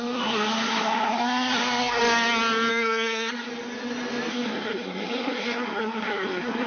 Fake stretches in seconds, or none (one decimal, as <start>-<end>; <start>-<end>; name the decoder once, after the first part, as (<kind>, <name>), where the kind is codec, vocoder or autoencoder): 0.0-2.0 (codec, SNAC); 2.7-3.5; 4.3-6.7